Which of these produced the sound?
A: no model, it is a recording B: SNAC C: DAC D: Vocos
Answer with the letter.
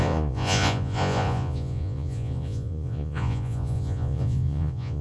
D